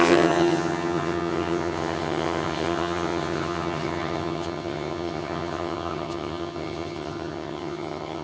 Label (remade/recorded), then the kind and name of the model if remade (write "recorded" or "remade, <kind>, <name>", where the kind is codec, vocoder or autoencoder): remade, vocoder, HiFi-GAN